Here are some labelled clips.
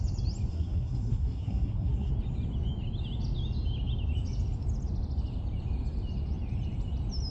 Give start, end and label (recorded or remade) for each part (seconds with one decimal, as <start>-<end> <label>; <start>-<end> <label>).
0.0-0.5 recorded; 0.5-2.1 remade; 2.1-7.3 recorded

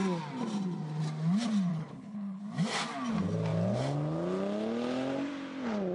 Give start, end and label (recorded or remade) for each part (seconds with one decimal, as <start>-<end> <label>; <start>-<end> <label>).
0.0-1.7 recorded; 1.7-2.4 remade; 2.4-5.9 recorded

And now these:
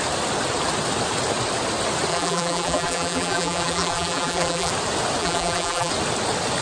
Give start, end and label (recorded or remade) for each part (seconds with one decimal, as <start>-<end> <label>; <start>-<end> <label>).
0.0-2.1 recorded; 2.1-4.7 remade; 4.7-5.2 recorded; 5.2-5.9 remade; 5.9-6.6 recorded

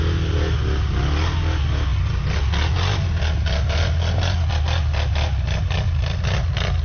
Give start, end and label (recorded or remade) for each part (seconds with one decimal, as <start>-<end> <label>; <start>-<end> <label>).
0.0-6.8 recorded

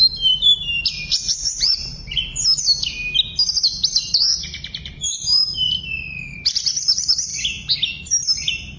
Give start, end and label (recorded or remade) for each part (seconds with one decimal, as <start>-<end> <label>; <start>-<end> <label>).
0.0-2.2 remade; 2.2-3.9 recorded; 3.9-7.3 remade; 7.3-8.0 recorded; 8.0-8.8 remade

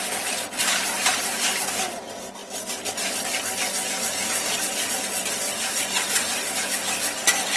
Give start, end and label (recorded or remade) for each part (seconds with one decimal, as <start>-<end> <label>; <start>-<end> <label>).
0.0-7.6 recorded

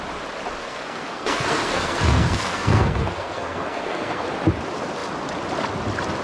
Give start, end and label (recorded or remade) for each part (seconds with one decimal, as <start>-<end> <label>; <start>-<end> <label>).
0.0-0.6 recorded; 0.6-4.3 remade; 4.3-6.2 recorded

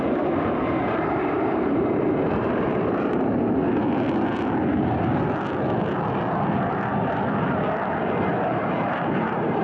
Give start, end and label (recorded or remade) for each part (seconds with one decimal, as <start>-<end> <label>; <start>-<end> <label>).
0.0-3.6 remade; 3.6-8.5 recorded; 8.5-9.6 remade